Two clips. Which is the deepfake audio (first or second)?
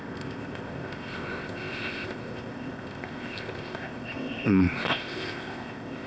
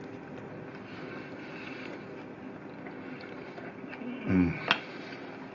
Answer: first